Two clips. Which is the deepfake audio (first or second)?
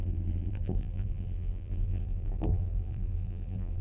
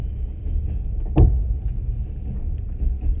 first